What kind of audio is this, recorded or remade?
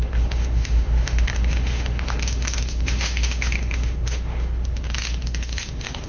remade